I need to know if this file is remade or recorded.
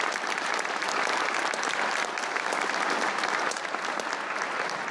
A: recorded